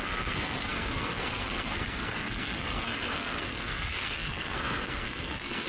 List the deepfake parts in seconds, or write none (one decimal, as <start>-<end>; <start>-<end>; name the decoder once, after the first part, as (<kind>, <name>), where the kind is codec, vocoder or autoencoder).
0.0-5.7 (codec, SNAC)